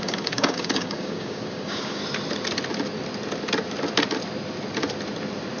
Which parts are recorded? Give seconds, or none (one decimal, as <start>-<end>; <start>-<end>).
2.0-5.6